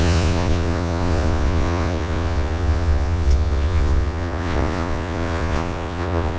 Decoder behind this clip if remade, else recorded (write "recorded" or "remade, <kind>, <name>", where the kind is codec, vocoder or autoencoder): remade, vocoder, Vocos